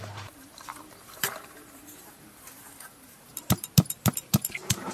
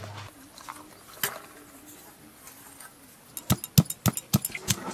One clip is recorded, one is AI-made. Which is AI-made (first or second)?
first